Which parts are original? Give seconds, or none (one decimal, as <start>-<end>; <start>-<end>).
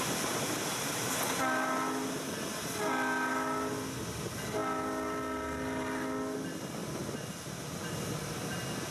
0.0-8.9